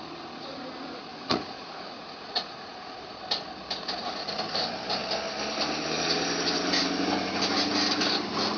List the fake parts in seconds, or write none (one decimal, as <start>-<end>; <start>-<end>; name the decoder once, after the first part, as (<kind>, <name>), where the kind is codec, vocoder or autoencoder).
1.1-3.2 (vocoder, Vocos)